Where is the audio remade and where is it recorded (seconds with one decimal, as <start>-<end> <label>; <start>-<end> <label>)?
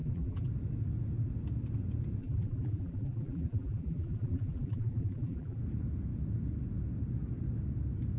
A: 0.0-0.5 remade; 0.5-2.2 recorded; 2.2-5.6 remade; 5.6-8.2 recorded